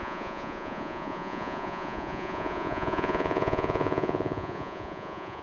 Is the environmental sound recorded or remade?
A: remade